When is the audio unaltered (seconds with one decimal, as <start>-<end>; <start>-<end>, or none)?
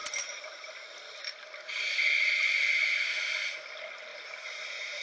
0.0-4.1